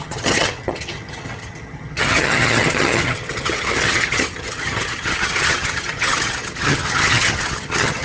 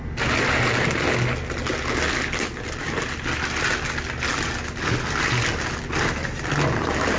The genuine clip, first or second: second